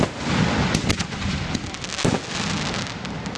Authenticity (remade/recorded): recorded